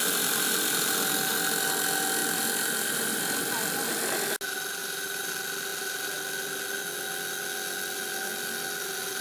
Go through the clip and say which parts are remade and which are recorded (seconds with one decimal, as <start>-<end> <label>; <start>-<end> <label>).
0.0-2.2 recorded; 2.2-3.2 remade; 3.2-4.8 recorded; 4.8-5.3 remade; 5.3-9.2 recorded